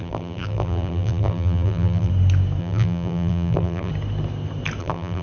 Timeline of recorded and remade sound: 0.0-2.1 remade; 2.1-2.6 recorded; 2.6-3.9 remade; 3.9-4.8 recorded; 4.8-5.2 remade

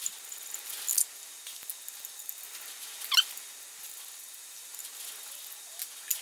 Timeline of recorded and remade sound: 0.0-6.2 recorded

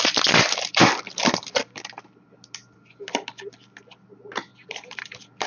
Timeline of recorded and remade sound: 0.0-4.5 recorded; 4.5-5.5 remade